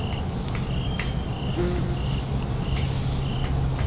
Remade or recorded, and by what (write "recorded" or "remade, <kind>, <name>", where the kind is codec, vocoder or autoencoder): recorded